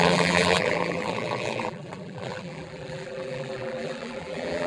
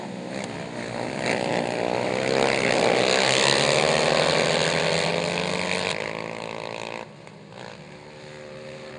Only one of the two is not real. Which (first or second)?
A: first